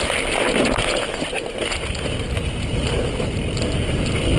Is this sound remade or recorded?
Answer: recorded